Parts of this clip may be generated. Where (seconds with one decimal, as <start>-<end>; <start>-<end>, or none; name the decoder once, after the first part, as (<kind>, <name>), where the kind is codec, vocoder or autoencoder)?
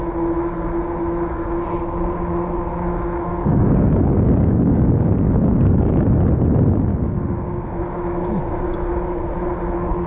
3.3-6.0 (codec, DAC); 6.9-7.8